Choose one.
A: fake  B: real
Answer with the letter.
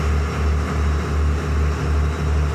B